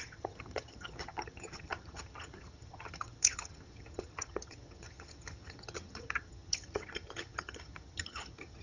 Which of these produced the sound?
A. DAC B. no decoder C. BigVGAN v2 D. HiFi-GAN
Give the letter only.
D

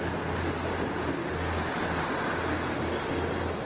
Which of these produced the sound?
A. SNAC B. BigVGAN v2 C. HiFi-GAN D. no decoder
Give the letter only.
D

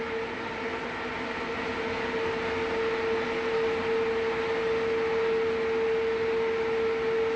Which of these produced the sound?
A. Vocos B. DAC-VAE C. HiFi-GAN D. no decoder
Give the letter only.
D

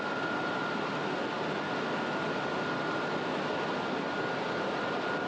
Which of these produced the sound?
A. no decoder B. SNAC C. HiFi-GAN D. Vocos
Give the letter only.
A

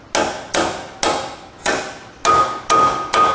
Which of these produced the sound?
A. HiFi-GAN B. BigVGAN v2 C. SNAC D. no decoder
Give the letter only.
D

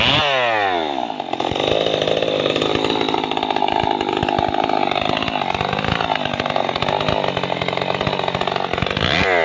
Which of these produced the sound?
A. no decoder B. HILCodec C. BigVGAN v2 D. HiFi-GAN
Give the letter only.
A